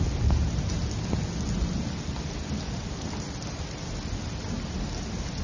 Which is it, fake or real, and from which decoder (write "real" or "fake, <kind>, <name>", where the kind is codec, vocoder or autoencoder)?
real